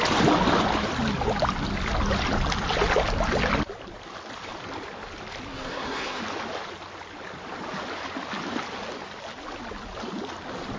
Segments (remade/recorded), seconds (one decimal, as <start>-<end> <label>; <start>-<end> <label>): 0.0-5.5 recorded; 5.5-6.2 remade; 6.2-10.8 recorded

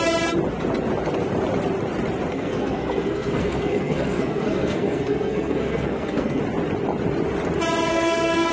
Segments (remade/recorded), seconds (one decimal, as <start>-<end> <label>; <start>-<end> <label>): 0.0-2.3 recorded; 2.3-6.4 remade; 6.4-7.9 recorded; 7.9-8.5 remade

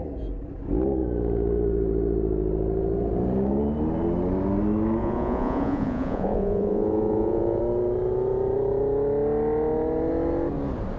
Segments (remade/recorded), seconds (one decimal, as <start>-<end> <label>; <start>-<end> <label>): 0.0-5.0 recorded; 5.0-7.6 remade; 7.6-11.0 recorded

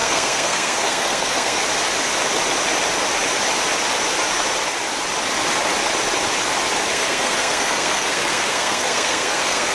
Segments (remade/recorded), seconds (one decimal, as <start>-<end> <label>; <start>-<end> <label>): 0.0-1.6 remade; 1.6-6.9 recorded; 6.9-9.7 remade

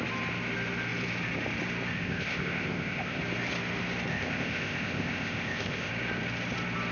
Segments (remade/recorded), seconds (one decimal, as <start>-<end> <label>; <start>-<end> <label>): 0.0-1.9 recorded; 1.9-3.2 remade; 3.2-4.1 recorded; 4.1-5.9 remade; 5.9-6.9 recorded